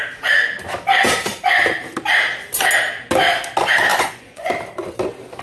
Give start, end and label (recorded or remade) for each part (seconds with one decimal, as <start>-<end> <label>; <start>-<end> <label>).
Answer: 0.0-3.9 recorded; 3.9-4.5 remade; 4.5-5.4 recorded